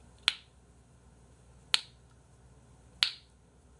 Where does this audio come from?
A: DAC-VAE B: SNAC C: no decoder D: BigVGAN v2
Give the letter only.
C